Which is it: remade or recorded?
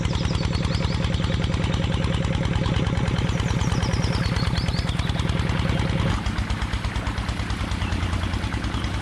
recorded